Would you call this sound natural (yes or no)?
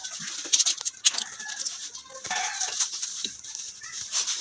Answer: yes